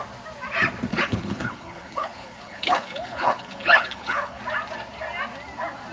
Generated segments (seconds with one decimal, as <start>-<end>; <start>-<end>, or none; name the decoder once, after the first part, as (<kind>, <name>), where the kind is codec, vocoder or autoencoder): 0.9-4.4 (codec, HILCodec)